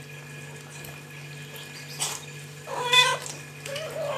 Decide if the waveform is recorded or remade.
recorded